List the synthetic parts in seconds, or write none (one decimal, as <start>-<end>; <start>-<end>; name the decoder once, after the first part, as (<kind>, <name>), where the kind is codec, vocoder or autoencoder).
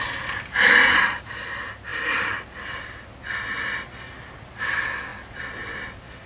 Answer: none